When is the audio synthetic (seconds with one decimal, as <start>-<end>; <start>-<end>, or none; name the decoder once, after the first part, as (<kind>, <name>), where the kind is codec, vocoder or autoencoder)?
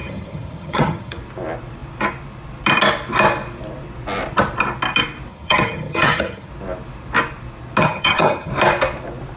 0.0-1.2 (vocoder, HiFi-GAN); 5.3-6.5; 7.8-8.5